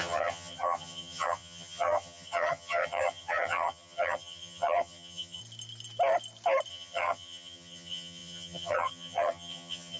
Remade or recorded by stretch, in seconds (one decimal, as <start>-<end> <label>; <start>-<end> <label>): 0.0-5.4 remade; 5.4-6.7 recorded; 6.7-10.0 remade